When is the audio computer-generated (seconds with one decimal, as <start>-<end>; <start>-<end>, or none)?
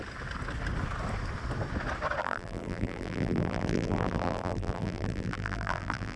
2.2-6.2